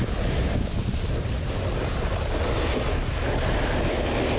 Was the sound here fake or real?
real